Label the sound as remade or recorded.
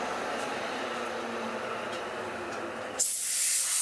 recorded